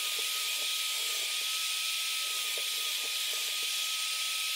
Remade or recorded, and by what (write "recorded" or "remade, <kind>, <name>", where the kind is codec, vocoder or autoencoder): remade, vocoder, BigVGAN v2